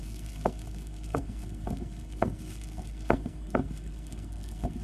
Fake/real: fake